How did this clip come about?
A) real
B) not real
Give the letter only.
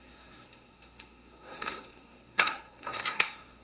B